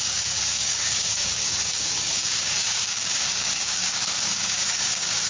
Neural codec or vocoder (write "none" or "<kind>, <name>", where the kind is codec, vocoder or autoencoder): codec, DAC